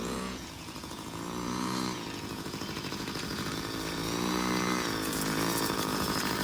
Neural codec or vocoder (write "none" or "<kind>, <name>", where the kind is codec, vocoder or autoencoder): vocoder, Vocos